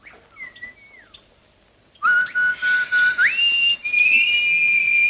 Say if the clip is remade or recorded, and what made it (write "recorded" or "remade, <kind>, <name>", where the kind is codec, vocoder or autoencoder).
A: recorded